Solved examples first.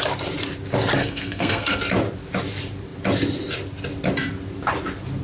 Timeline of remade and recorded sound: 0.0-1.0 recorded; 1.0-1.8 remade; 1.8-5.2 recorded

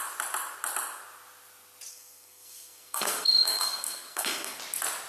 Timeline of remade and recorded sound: 0.0-1.9 recorded; 1.9-4.6 remade; 4.6-5.1 recorded